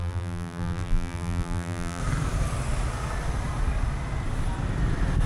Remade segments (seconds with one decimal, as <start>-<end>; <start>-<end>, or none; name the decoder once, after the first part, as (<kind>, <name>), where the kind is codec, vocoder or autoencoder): 0.0-2.0 (vocoder, BigVGAN v2)